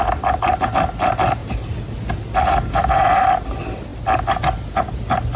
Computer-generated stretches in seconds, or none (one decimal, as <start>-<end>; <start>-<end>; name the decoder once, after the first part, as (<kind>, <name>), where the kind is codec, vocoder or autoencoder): none